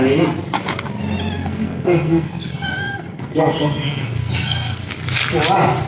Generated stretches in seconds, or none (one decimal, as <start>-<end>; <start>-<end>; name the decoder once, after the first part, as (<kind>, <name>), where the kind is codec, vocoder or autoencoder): 1.4-4.9 (codec, SNAC)

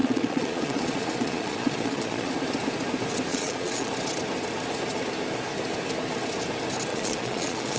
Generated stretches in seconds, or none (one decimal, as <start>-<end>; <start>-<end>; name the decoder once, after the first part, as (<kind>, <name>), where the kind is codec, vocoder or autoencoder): 0.0-2.3 (vocoder, Vocos); 3.3-3.9; 6.9-7.8

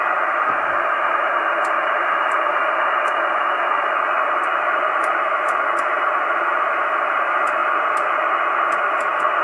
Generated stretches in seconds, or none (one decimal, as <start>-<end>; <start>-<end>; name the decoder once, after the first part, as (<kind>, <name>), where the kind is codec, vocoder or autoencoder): 0.0-7.6 (vocoder, BigVGAN v2); 8.7-9.4

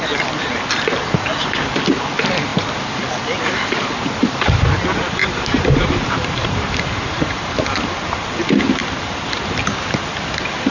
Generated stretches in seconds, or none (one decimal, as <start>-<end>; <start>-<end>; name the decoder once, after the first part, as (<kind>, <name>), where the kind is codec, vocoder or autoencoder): 4.2-4.8 (vocoder, BigVGAN v2); 5.2-7.5

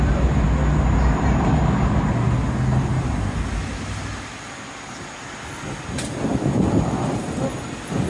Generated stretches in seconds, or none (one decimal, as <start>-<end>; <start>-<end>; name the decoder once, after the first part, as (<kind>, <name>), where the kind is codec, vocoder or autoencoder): none

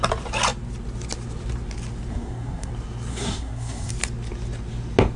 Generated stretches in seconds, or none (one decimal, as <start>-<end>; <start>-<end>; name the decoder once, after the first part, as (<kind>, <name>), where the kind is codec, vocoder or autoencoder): 2.1-2.7 (codec, SNAC); 3.1-3.9